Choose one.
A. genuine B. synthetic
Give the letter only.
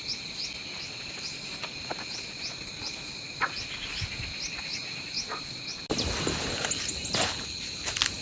A